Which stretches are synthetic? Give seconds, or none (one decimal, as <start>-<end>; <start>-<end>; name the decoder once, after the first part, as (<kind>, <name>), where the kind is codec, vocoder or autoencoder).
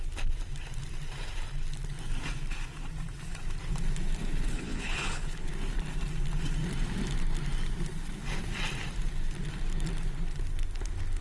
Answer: 4.5-5.5 (codec, HILCodec)